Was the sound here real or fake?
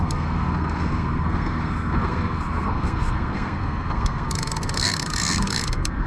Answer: fake